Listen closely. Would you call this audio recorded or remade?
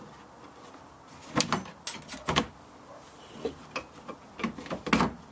recorded